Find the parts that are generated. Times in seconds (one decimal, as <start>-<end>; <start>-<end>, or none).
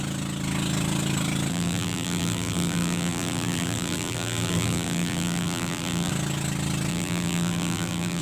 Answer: 1.5-6.1; 6.9-8.2